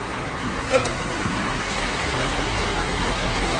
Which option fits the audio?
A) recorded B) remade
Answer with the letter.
B